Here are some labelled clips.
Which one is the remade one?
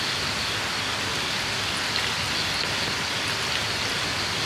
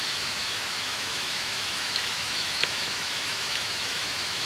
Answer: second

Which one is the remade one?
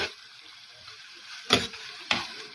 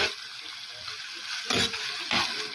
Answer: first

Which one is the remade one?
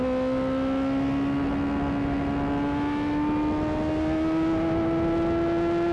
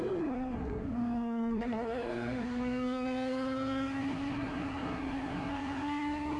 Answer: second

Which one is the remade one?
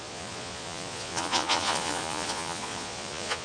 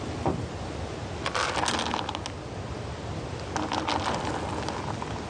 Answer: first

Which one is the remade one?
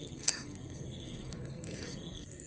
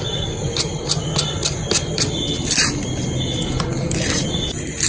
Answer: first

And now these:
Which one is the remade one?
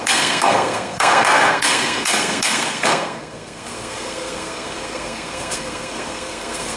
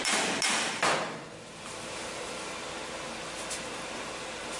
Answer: first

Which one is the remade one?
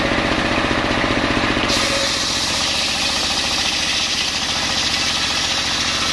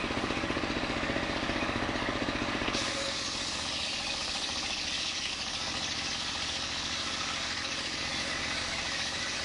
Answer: second